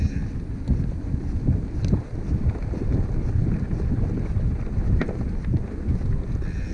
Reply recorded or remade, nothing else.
recorded